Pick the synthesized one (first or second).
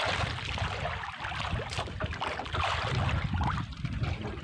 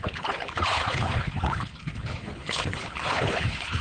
second